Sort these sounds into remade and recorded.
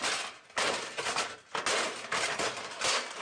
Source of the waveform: recorded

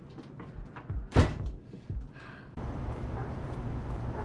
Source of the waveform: recorded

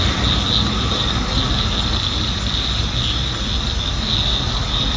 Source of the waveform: recorded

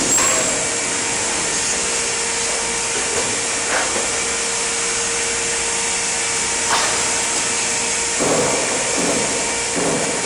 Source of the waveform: recorded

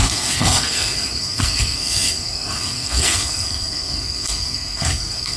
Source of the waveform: remade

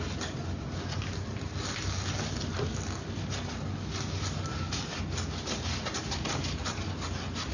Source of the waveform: recorded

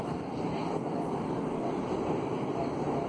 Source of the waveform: remade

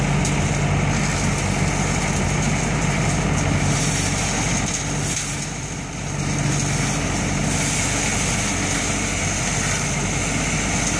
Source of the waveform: recorded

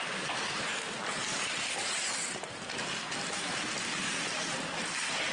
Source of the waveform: recorded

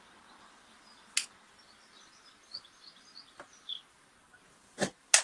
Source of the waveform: recorded